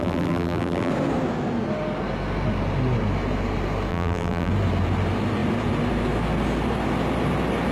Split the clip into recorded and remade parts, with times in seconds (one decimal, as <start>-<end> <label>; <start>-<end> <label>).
0.0-0.9 remade; 0.9-3.9 recorded; 3.9-4.5 remade; 4.5-7.7 recorded